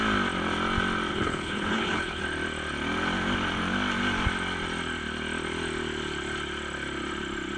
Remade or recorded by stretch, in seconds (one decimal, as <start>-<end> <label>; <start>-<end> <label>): 0.0-1.1 recorded; 1.1-2.2 remade; 2.2-7.6 recorded